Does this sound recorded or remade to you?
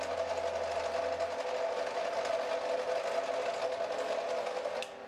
recorded